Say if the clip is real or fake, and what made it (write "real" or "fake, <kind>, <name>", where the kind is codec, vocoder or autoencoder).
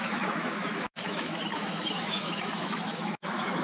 fake, autoencoder, DAC-VAE